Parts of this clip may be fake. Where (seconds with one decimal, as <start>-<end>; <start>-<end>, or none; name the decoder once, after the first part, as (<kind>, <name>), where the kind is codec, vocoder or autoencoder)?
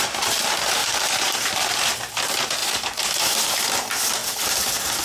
0.8-1.6 (vocoder, BigVGAN v2); 2.6-3.6; 4.2-5.0